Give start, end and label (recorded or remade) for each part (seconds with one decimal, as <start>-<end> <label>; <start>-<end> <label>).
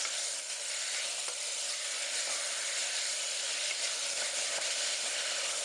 0.0-5.6 recorded